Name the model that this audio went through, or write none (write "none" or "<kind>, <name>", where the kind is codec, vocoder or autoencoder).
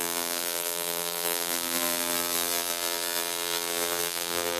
vocoder, BigVGAN v2